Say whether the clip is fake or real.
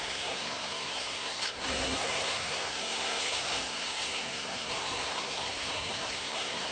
fake